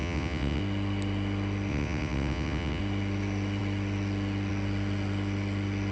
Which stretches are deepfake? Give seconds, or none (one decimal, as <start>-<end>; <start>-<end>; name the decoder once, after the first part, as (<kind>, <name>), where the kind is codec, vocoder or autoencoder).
0.0-0.6 (vocoder, WaveNeXt); 1.7-2.8